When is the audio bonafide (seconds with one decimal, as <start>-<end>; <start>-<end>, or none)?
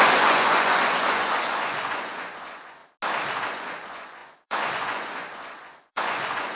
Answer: 2.8-3.5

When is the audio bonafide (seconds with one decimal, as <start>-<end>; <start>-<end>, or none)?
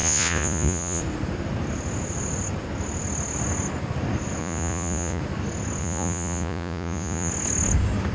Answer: 1.0-4.4; 5.2-5.8; 7.3-8.1